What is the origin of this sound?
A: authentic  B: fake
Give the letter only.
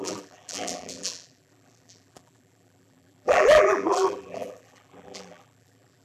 B